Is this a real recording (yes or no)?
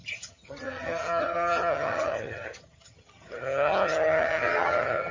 no